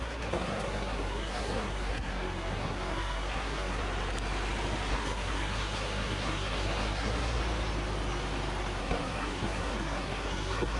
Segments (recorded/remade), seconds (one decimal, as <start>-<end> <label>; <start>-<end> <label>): 0.0-3.8 remade; 3.8-4.9 recorded; 4.9-7.4 remade; 7.4-8.8 recorded; 8.8-10.8 remade